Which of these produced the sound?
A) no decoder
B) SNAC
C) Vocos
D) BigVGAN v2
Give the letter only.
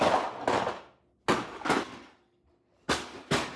A